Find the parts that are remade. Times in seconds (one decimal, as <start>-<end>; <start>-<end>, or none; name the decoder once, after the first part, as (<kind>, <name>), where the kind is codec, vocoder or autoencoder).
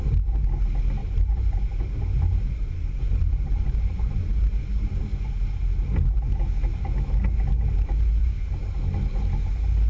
1.0-5.0 (vocoder, BigVGAN v2); 8.2-8.8